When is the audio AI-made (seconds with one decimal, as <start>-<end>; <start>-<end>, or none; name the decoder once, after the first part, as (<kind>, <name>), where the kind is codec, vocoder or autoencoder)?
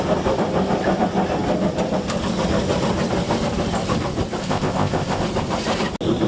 4.4-5.2 (codec, ZipCodec)